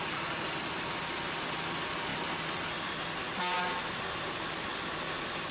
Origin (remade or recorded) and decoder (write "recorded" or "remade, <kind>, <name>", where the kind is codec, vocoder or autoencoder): recorded